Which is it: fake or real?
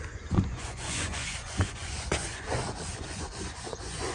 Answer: fake